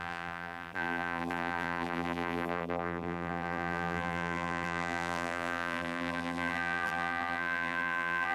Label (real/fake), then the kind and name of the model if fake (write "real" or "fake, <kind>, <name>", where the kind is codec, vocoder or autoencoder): fake, vocoder, BigVGAN v2